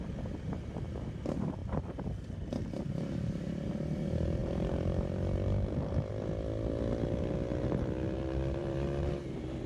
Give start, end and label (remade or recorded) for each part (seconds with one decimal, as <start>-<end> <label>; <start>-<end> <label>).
0.0-1.6 recorded; 1.6-2.1 remade; 2.1-4.4 recorded; 4.4-6.1 remade; 6.1-8.6 recorded; 8.6-9.1 remade; 9.1-9.7 recorded